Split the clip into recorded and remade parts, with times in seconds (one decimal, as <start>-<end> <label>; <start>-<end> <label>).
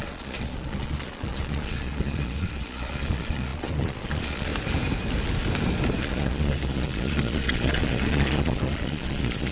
0.0-4.5 remade; 4.5-6.0 recorded; 6.0-9.5 remade